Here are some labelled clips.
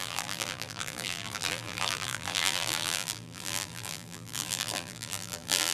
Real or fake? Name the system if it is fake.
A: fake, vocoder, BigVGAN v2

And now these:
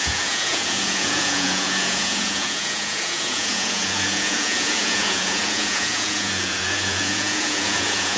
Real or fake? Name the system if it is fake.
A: fake, vocoder, Vocos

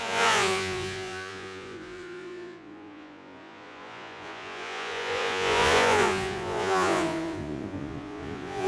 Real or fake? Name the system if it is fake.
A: fake, vocoder, Vocos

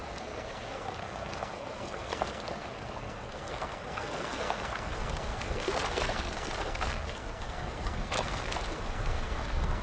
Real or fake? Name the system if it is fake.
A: fake, codec, SNAC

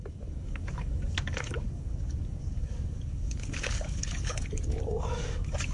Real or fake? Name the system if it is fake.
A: fake, codec, DAC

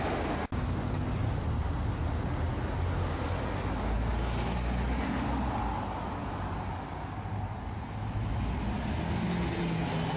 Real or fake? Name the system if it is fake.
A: real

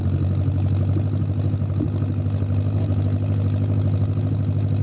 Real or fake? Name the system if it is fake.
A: real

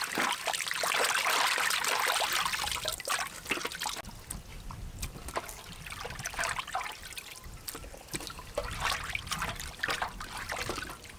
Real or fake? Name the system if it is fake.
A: real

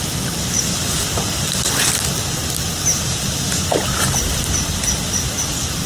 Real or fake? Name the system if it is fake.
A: real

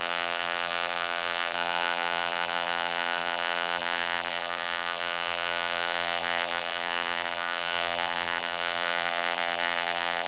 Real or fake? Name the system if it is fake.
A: fake, vocoder, BigVGAN v2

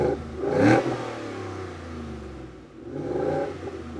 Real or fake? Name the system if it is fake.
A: real